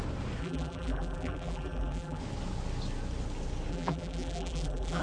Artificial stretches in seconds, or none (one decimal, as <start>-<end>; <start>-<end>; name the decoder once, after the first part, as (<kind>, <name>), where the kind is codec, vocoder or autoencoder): 0.4-2.2 (vocoder, BigVGAN v2); 3.7-5.0